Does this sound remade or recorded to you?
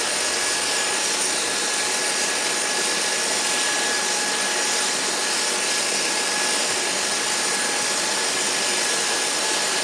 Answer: recorded